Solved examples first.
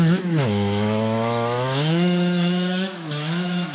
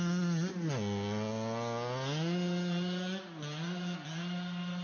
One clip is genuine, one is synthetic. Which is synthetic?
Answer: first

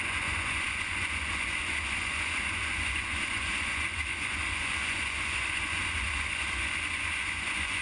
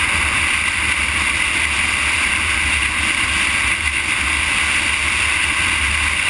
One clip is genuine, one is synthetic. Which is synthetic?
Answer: first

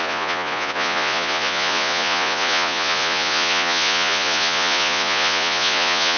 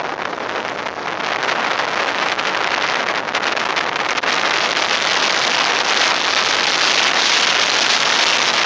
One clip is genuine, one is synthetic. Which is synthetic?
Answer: first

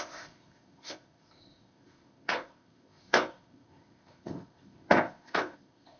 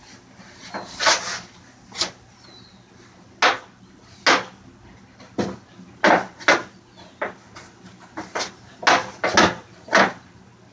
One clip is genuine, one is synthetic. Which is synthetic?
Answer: first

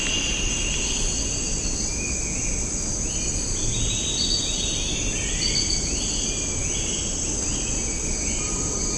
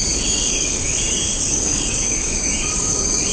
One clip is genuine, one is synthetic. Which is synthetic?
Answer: second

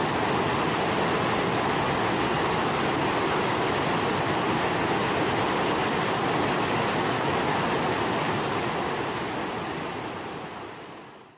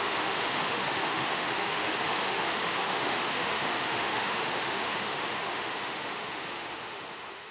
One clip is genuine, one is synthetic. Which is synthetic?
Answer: second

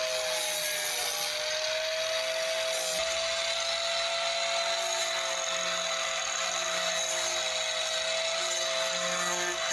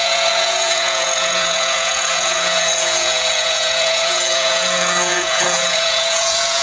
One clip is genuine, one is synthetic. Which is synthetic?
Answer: second